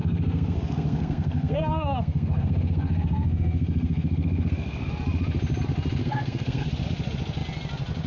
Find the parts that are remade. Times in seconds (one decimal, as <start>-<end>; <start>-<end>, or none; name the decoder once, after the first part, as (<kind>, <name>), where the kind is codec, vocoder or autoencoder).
0.0-4.9 (codec, SNAC); 6.0-6.7